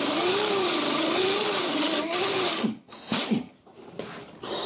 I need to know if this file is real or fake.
real